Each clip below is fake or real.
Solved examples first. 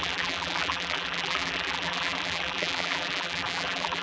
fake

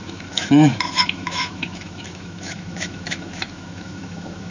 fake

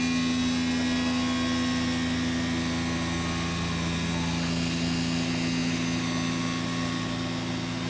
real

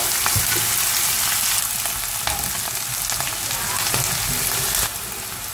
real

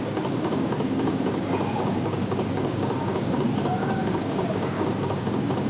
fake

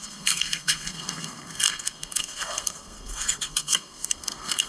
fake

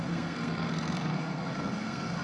fake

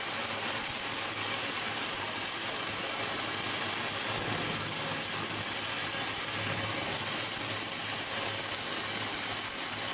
real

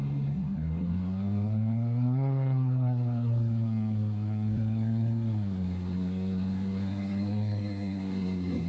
fake